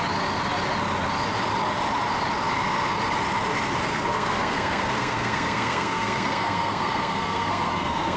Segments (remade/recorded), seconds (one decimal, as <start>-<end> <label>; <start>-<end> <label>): 0.0-3.9 recorded; 3.9-8.2 remade